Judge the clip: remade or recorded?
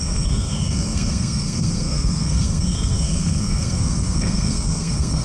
remade